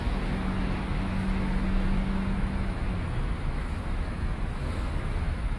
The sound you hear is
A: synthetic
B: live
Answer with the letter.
A